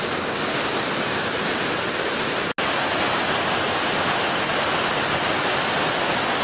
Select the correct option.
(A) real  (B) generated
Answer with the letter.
A